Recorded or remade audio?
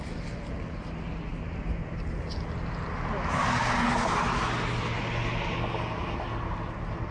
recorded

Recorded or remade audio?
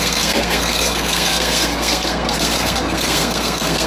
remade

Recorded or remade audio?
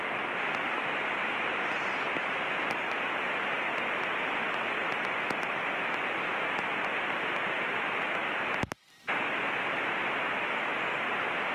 recorded